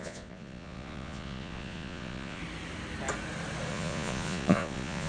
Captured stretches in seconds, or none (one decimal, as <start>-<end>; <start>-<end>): 2.4-3.7